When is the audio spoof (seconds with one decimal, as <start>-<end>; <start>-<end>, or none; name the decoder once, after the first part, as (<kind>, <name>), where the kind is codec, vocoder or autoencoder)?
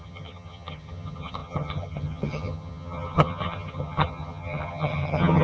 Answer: 0.0-5.4 (vocoder, HiFi-GAN)